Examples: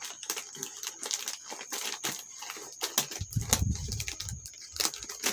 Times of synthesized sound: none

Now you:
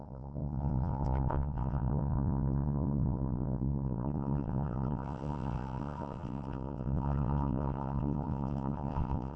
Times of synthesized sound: 0.0-9.4

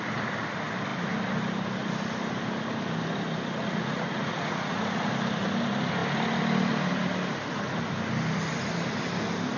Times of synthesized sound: 3.6-5.1

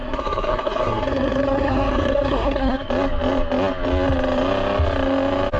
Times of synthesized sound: 0.0-2.9

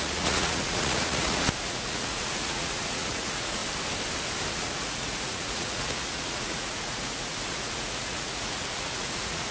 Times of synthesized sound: 0.0-3.6; 4.5-9.5

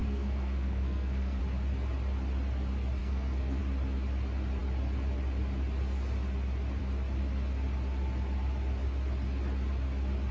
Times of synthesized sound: 0.0-1.4; 3.0-3.6

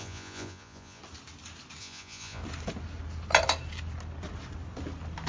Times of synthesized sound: 0.0-1.0; 1.8-2.4